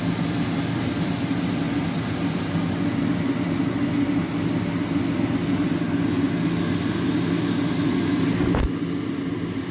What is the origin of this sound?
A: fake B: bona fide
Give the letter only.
B